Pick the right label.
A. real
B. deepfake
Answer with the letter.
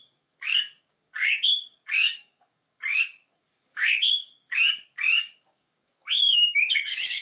B